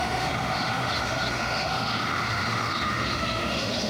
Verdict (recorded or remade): remade